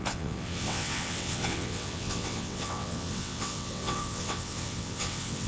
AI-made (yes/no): yes